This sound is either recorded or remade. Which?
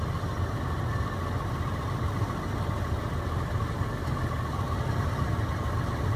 recorded